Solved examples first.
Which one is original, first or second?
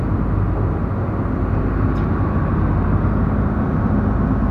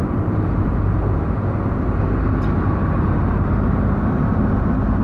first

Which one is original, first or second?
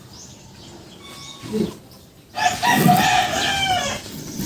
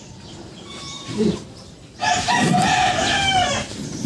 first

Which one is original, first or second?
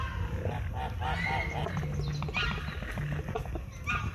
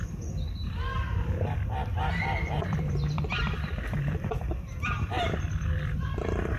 first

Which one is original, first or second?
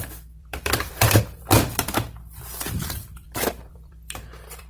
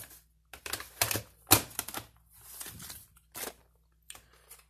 second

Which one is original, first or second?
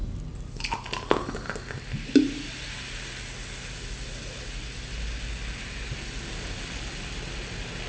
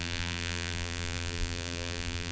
first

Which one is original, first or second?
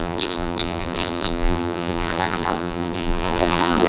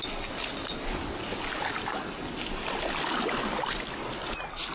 second